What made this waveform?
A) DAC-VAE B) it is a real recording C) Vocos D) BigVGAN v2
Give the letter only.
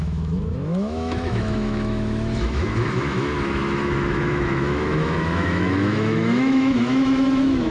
A